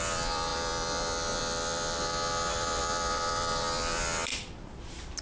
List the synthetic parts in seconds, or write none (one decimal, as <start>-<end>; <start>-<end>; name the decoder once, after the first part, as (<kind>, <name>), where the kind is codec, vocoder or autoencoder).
0.0-4.3 (vocoder, BigVGAN v2)